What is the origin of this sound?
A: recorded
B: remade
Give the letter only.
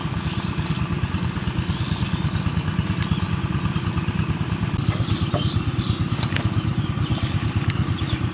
A